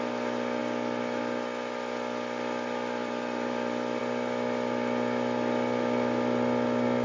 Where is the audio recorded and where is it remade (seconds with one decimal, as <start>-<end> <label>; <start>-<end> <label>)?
0.0-3.0 recorded; 3.0-4.0 remade; 4.0-7.0 recorded